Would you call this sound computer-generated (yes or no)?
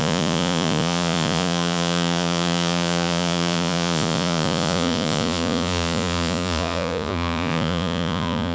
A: yes